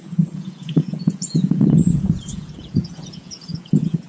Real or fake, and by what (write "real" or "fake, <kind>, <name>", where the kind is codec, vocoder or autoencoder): fake, vocoder, Vocos